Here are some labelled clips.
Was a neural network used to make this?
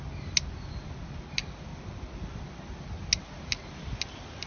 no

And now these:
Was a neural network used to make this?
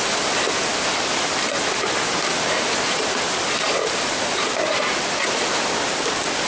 no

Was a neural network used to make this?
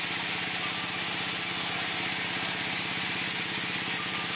no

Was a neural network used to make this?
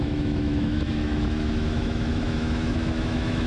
yes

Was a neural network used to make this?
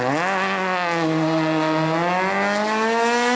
no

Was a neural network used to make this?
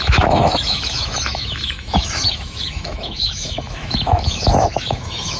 yes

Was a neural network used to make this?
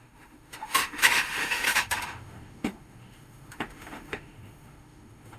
yes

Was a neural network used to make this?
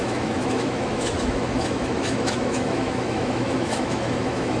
yes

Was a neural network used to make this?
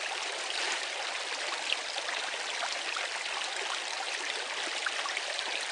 no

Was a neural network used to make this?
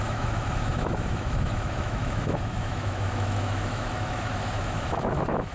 yes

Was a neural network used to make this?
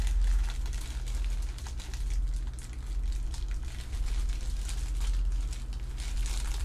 no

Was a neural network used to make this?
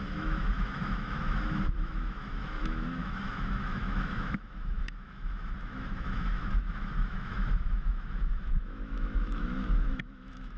yes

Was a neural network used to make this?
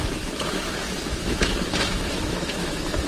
yes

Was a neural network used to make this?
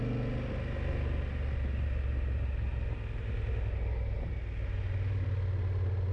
no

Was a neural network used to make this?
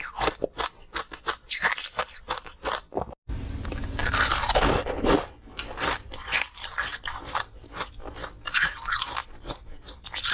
no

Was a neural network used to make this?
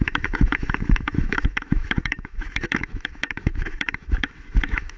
yes